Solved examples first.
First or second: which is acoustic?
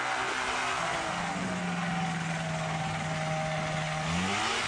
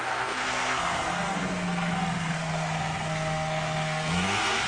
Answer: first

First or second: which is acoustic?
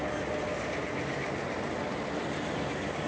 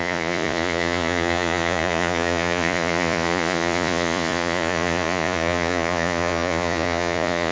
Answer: first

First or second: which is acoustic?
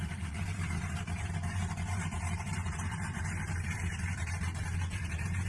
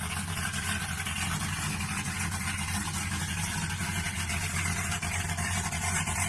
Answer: second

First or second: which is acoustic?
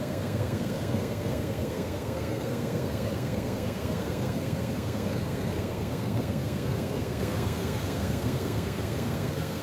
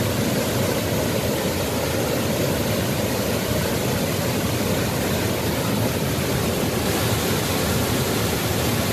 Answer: second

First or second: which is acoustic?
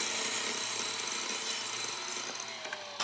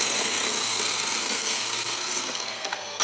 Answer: first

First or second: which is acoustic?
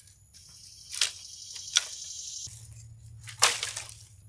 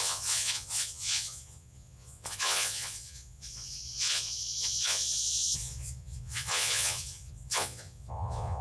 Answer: first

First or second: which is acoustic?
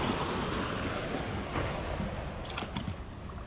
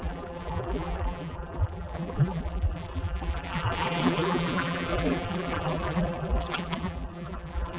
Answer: first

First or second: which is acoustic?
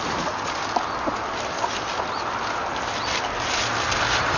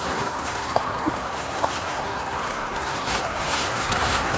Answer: first